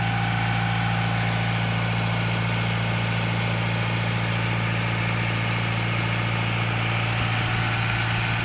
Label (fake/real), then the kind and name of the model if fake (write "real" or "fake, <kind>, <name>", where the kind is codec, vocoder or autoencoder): real